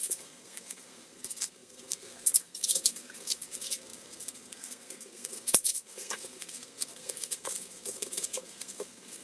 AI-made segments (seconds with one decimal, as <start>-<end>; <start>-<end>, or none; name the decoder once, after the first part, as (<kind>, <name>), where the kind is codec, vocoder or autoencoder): 0.0-9.2 (codec, SNAC)